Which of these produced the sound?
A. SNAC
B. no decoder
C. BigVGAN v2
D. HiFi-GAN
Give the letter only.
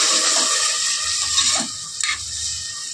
B